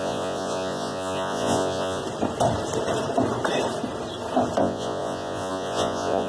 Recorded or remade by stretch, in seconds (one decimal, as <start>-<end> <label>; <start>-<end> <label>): 0.0-2.0 remade; 2.0-4.6 recorded; 4.6-6.3 remade